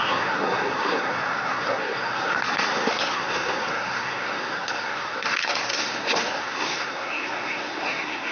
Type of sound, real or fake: fake